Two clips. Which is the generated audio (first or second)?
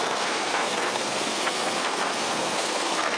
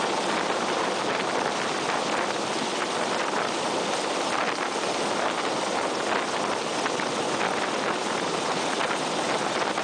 first